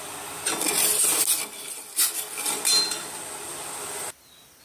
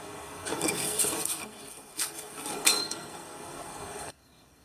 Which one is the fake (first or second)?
second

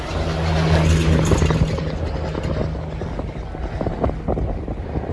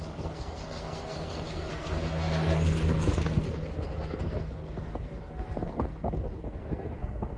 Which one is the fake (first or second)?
second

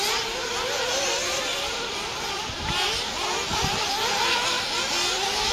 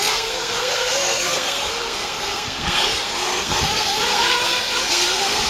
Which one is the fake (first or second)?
second